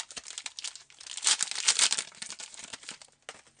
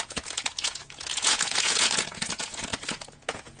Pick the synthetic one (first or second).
second